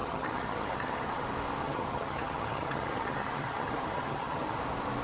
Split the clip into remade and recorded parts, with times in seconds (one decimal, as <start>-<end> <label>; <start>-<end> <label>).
0.0-1.2 remade; 1.2-1.6 recorded; 1.6-4.6 remade; 4.6-5.0 recorded